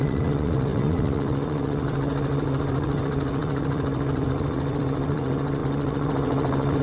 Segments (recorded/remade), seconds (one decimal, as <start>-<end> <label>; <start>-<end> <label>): 0.0-6.8 remade